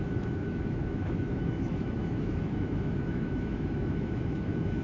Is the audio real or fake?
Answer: fake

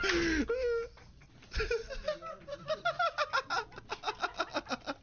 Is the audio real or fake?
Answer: real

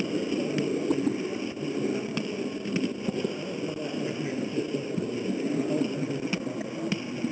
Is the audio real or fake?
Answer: real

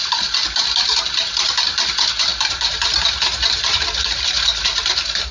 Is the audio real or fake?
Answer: real